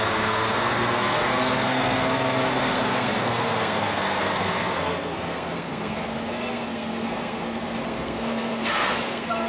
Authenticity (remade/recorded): remade